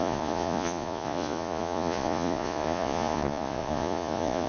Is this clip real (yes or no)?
no